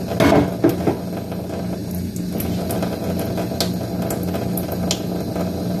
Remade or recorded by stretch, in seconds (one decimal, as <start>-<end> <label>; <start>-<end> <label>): 0.0-5.8 recorded